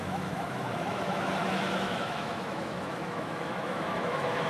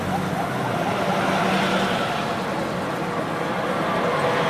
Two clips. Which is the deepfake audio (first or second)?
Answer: first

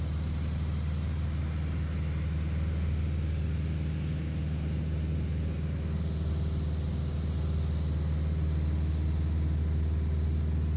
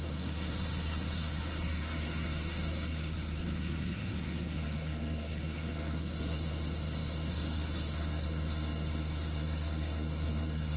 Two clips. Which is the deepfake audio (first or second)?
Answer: second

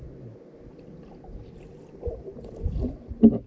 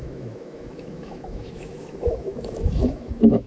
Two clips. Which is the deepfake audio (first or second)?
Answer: second